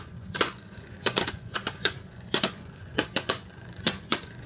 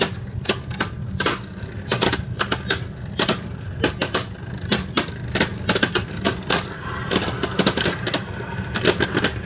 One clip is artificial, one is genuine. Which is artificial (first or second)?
first